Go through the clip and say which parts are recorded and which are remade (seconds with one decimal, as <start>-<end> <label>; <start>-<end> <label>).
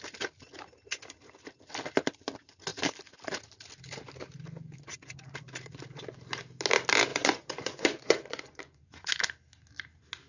0.0-7.1 recorded; 7.1-9.1 remade; 9.1-10.3 recorded